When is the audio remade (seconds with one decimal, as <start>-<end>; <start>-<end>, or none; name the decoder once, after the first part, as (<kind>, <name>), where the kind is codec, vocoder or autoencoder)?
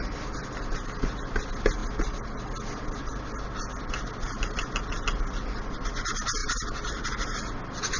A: none